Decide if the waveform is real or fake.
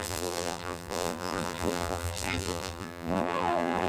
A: fake